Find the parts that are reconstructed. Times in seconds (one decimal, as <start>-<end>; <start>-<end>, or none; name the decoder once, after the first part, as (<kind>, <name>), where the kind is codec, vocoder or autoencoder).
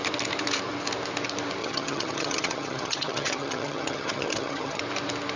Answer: 1.6-4.8 (vocoder, HiFi-GAN)